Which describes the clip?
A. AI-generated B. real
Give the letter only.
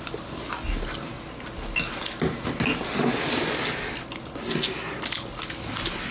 B